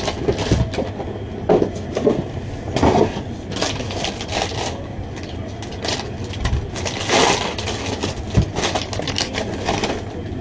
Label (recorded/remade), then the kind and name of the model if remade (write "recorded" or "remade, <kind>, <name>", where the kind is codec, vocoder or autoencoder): recorded